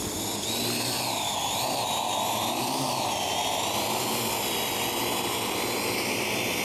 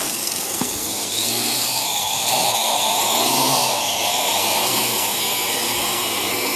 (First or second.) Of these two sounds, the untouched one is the first